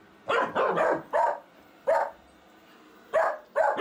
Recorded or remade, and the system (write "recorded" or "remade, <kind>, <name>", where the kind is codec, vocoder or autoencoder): recorded